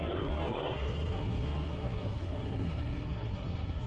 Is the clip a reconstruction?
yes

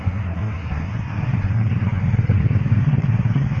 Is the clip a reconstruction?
yes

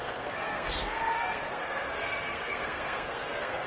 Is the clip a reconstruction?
yes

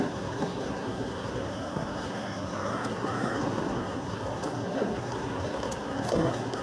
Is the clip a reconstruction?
yes